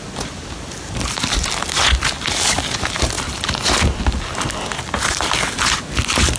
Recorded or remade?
recorded